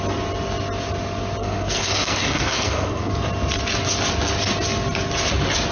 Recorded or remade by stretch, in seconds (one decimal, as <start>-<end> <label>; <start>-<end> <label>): 0.0-1.4 recorded; 1.4-3.1 remade; 3.1-5.7 recorded

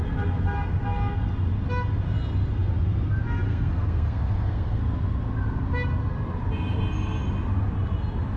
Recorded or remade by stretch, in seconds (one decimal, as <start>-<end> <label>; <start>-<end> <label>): 0.0-3.5 recorded; 3.5-4.8 remade; 4.8-8.4 recorded